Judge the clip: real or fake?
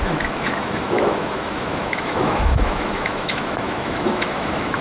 fake